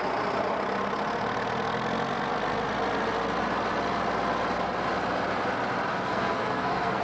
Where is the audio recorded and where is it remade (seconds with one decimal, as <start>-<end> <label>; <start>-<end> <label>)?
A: 0.0-5.9 recorded; 5.9-7.0 remade